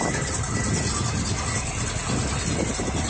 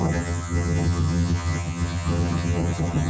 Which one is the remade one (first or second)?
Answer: second